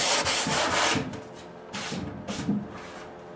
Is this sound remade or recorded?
recorded